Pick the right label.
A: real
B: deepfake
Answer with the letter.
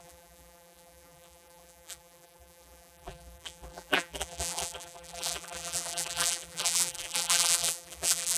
B